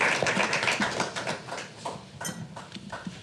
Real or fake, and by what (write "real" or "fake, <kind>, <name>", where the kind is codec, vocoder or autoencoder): real